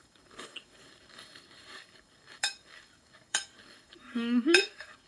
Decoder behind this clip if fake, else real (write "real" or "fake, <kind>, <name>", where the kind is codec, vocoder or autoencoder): fake, codec, DAC